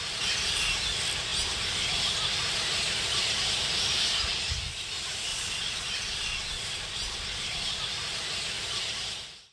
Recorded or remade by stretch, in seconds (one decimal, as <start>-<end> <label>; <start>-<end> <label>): 0.0-5.3 recorded; 5.3-7.8 remade; 7.8-9.5 recorded